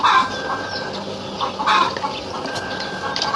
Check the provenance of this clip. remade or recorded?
recorded